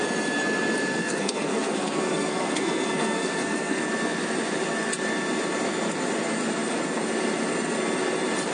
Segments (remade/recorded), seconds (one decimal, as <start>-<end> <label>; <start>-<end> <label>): 0.0-1.0 recorded; 1.0-3.8 remade; 3.8-8.5 recorded